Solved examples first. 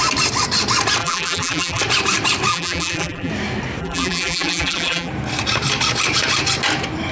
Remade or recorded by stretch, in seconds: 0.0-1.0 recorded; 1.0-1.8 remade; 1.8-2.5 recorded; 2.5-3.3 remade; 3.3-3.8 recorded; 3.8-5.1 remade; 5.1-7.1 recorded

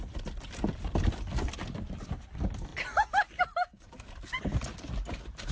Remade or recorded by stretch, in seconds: 0.0-2.7 remade; 2.7-3.8 recorded; 3.8-5.5 remade

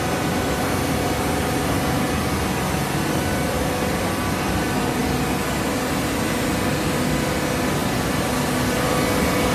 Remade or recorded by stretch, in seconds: 0.0-9.5 recorded

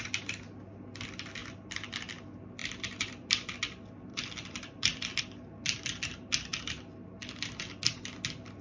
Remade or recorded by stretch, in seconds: 0.0-2.6 recorded; 2.6-3.5 remade; 3.5-4.1 recorded; 4.1-5.2 remade; 5.2-8.6 recorded

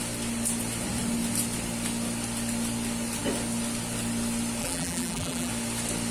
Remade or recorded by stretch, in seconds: 0.0-4.6 recorded; 4.6-5.5 remade; 5.5-6.1 recorded

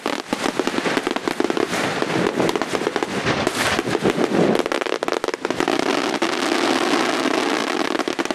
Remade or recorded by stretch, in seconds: 0.0-8.3 recorded

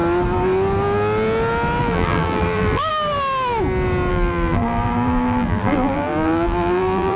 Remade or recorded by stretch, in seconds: 0.0-1.8 recorded; 1.8-2.9 remade; 2.9-4.1 recorded; 4.1-7.2 remade